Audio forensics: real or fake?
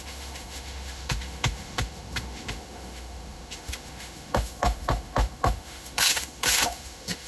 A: fake